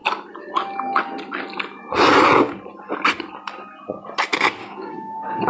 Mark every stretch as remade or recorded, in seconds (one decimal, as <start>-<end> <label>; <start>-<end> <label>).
0.0-4.6 recorded; 4.6-5.5 remade